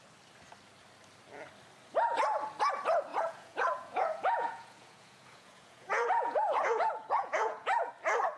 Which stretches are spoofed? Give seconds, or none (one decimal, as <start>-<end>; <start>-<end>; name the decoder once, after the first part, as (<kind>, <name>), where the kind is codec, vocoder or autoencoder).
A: 3.1-7.9 (vocoder, Vocos)